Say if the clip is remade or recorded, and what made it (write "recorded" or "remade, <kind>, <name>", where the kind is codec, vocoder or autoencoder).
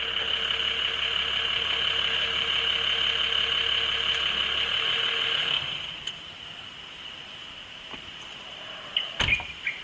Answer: recorded